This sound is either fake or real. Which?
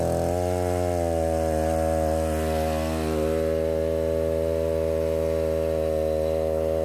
real